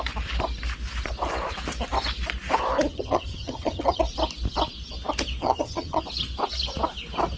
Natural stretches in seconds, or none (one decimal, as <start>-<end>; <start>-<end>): 0.0-2.9; 4.0-5.4; 6.0-7.4